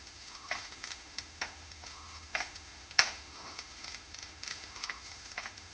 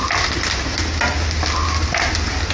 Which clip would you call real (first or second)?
second